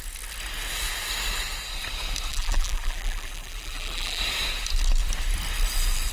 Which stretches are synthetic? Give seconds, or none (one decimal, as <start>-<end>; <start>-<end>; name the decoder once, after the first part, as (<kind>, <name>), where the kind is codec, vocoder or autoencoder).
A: 2.3-4.2 (vocoder, BigVGAN v2)